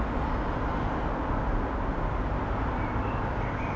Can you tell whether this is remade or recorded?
recorded